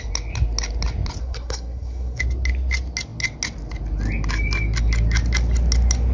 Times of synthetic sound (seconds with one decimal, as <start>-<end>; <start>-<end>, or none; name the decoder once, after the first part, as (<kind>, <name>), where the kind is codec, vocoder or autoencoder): 1.2-2.2 (codec, SNAC)